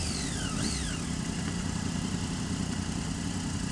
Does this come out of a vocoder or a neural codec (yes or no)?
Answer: no